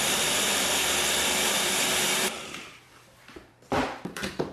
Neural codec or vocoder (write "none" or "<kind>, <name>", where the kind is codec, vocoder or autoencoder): vocoder, BigVGAN v2